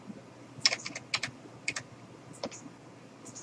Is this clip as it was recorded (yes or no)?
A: yes